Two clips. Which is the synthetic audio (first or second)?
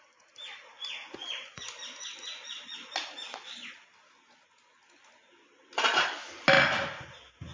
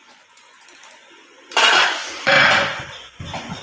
second